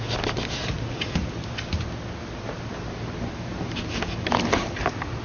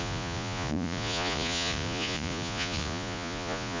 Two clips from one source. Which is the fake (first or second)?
second